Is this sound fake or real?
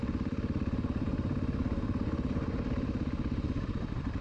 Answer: fake